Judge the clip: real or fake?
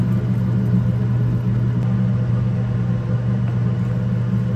real